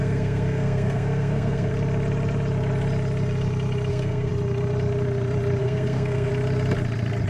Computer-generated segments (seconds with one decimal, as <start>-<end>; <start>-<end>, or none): 0.0-1.7; 3.9-4.3; 5.6-6.3